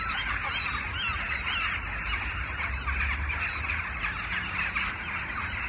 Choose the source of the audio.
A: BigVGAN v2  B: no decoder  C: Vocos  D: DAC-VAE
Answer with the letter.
B